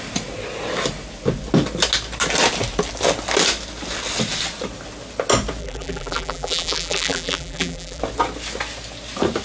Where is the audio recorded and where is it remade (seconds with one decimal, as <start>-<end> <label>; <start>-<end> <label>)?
0.0-5.6 recorded; 5.6-8.0 remade; 8.0-9.4 recorded